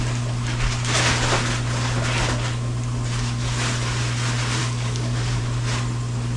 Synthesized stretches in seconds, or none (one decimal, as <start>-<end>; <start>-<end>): 4.6-5.4